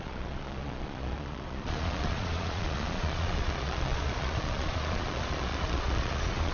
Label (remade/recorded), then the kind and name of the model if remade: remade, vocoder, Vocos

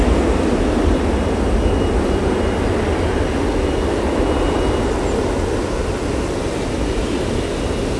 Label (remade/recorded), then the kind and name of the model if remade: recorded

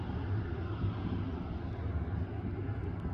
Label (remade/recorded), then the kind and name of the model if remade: recorded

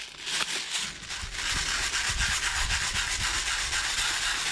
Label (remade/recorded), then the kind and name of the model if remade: recorded